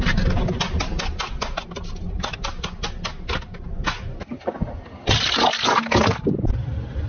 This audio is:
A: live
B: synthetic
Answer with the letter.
A